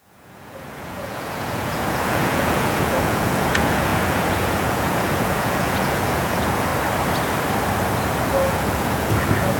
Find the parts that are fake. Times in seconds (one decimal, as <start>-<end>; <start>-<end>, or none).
0.0-6.7; 8.3-9.6